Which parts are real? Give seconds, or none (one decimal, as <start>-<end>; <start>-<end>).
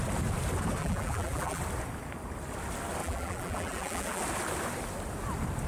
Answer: 0.0-0.8; 1.6-3.0; 4.2-5.7